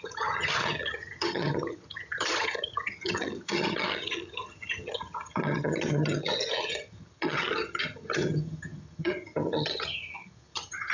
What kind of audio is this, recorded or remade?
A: remade